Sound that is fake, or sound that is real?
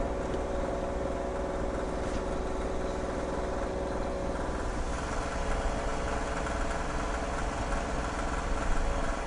real